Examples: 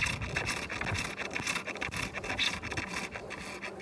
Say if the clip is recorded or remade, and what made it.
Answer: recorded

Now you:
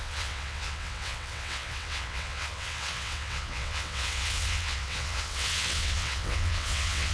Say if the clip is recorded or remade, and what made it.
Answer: remade, vocoder, WaveNeXt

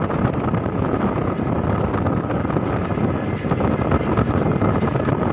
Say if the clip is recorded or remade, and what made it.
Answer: recorded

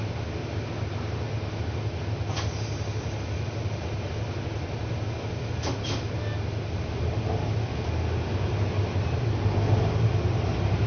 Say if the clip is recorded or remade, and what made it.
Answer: recorded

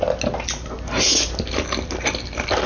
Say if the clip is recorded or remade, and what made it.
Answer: recorded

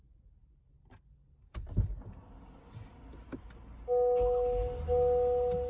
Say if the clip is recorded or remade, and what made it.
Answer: recorded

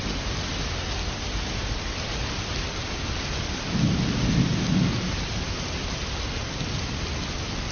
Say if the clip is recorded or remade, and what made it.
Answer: recorded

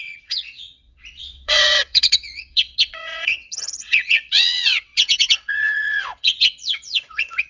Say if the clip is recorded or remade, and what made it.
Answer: remade, vocoder, WaveNeXt